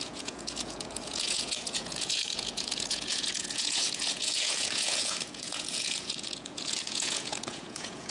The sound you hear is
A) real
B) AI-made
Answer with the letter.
B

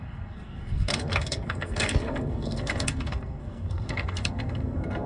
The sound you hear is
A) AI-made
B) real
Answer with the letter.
A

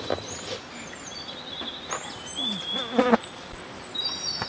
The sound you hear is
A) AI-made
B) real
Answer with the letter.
B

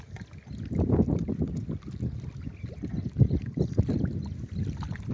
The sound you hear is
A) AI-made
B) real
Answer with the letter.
B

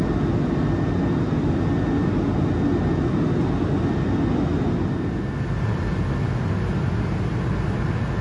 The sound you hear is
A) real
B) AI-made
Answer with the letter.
A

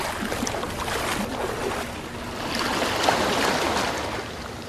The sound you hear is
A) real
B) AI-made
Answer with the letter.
A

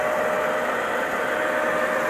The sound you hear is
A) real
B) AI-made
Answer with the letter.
A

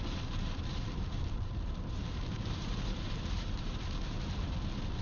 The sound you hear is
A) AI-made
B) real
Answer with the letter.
A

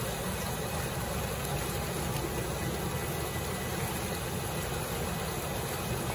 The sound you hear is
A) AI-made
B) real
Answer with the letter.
B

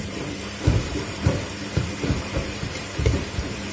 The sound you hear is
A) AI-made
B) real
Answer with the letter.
A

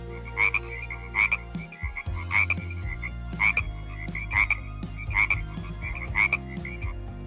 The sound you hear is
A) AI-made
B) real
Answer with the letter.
B